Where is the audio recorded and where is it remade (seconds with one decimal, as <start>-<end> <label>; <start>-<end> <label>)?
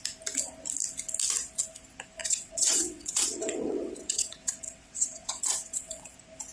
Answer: 0.0-2.2 recorded; 2.2-6.1 remade; 6.1-6.5 recorded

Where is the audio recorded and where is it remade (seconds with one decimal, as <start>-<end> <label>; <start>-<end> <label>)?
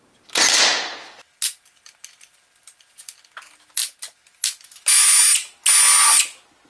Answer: 0.0-6.7 recorded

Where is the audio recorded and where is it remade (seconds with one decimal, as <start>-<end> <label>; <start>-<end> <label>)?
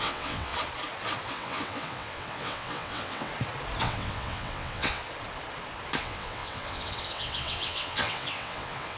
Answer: 0.0-0.5 remade; 0.5-1.3 recorded; 1.3-3.3 remade; 3.3-3.8 recorded; 3.8-5.0 remade; 5.0-6.0 recorded; 6.0-9.0 remade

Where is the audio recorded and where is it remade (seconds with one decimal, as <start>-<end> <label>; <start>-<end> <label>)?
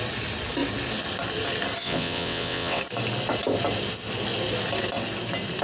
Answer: 0.0-1.8 recorded; 1.8-2.8 remade; 2.8-5.6 recorded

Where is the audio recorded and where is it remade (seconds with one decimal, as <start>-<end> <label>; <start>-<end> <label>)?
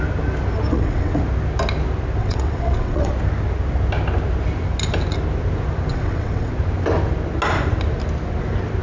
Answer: 0.0-0.7 recorded; 0.7-1.2 remade; 1.2-2.2 recorded; 2.2-3.1 remade; 3.1-5.9 recorded; 5.9-6.5 remade; 6.5-8.8 recorded